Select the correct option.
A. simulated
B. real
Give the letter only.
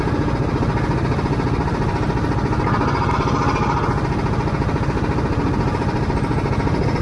B